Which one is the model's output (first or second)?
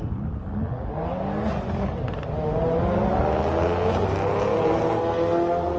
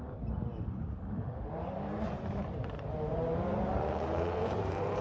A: second